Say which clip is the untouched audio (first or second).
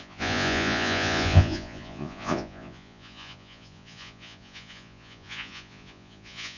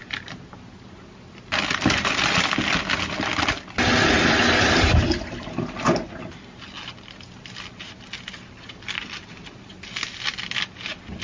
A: second